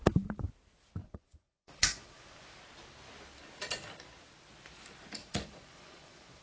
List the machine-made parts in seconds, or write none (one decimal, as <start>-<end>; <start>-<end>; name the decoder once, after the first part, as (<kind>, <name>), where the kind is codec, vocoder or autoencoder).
1.0-2.5 (vocoder, Vocos); 5.2-6.4